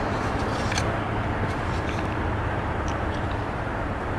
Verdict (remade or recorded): remade